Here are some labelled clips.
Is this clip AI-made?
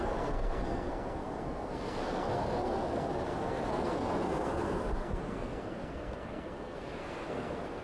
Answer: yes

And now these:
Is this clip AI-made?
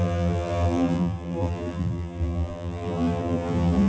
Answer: yes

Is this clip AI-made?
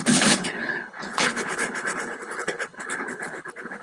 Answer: yes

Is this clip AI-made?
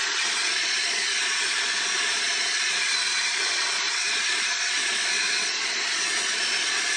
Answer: yes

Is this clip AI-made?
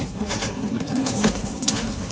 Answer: yes